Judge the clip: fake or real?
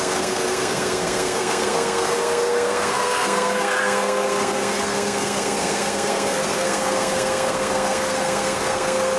fake